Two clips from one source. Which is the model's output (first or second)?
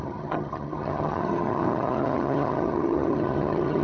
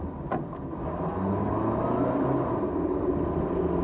first